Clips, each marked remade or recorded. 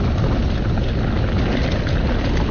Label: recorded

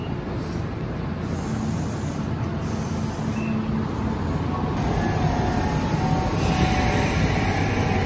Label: recorded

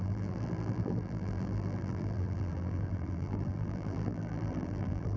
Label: remade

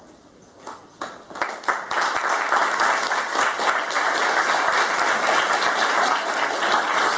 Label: recorded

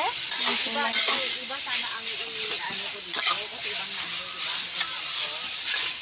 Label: remade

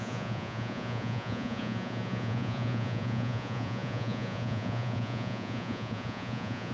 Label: remade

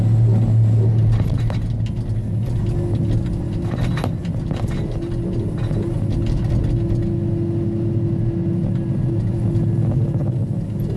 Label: recorded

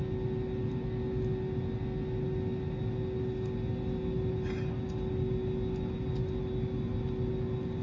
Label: recorded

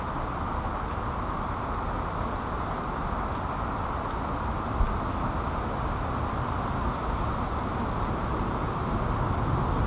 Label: recorded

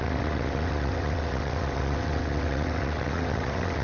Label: remade